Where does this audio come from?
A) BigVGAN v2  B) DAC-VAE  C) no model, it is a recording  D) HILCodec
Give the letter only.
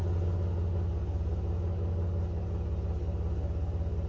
C